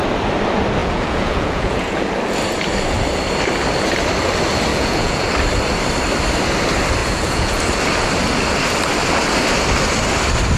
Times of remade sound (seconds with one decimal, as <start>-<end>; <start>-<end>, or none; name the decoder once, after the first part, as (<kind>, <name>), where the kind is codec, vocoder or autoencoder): 0.8-2.1 (vocoder, Vocos); 4.7-5.3; 7.0-7.6